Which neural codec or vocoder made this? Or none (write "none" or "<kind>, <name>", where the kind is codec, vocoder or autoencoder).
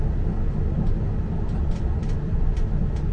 none